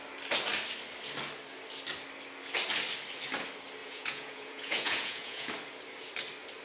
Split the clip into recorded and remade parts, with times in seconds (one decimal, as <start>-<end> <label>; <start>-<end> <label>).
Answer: 0.0-3.8 recorded; 3.8-5.5 remade; 5.5-6.6 recorded

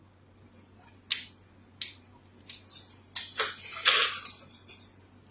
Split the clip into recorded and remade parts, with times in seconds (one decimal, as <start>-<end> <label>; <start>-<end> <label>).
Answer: 0.0-5.3 recorded